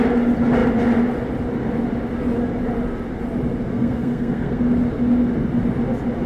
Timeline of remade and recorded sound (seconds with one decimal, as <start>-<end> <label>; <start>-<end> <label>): 0.0-3.7 recorded; 3.7-4.6 remade; 4.6-6.3 recorded

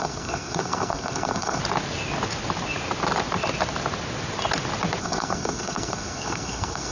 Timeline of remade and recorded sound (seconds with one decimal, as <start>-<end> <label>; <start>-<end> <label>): 0.0-1.6 remade; 1.6-5.0 recorded; 5.0-6.9 remade